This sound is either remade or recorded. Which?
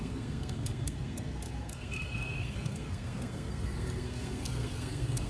remade